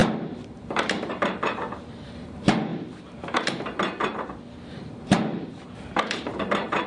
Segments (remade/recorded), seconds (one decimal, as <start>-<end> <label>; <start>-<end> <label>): 0.0-2.7 remade; 2.7-4.7 recorded; 4.7-6.9 remade

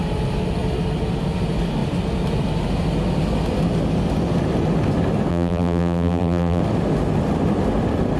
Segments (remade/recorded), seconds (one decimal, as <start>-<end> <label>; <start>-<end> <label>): 0.0-5.3 recorded; 5.3-6.6 remade; 6.6-8.2 recorded

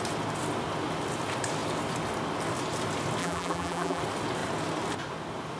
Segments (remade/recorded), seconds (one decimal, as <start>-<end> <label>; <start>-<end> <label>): 0.0-3.2 recorded; 3.2-4.0 remade; 4.0-5.6 recorded

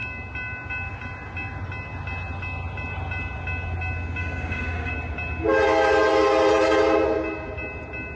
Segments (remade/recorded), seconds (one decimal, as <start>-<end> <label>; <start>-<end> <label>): 0.0-4.2 recorded; 4.2-4.9 remade; 4.9-8.2 recorded

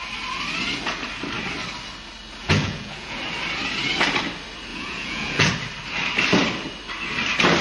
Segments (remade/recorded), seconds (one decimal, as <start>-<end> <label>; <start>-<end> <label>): 0.0-2.4 recorded; 2.4-3.2 remade; 3.2-4.7 recorded; 4.7-5.5 remade; 5.5-7.6 recorded

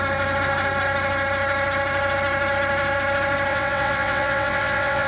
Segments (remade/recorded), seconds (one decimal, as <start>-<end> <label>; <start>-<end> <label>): 0.0-3.5 recorded; 3.5-5.1 remade

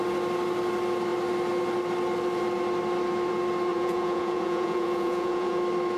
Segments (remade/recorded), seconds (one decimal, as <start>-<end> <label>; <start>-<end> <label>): 0.0-3.7 recorded; 3.7-5.6 remade; 5.6-6.0 recorded

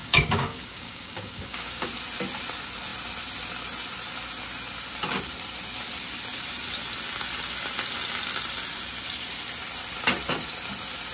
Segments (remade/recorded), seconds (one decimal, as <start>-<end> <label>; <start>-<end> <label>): 0.0-1.9 remade; 1.9-11.1 recorded